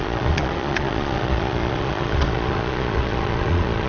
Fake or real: fake